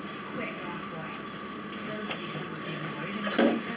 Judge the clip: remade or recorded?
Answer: recorded